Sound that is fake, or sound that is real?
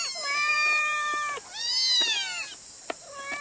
real